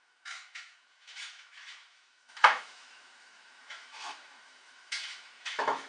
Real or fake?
fake